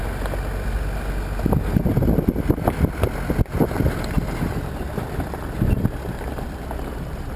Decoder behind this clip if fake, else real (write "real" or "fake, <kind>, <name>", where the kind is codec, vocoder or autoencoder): real